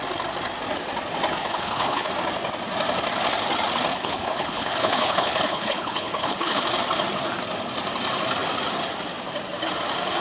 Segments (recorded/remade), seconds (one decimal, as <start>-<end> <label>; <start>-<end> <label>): 0.0-1.4 recorded; 1.4-2.1 remade; 2.1-3.9 recorded; 3.9-6.6 remade; 6.6-10.2 recorded